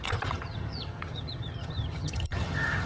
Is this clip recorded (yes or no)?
no